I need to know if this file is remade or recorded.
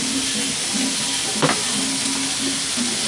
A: recorded